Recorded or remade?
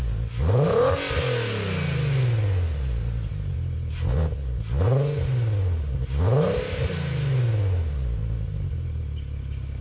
recorded